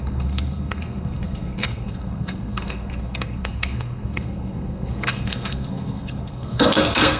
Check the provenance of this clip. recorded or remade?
remade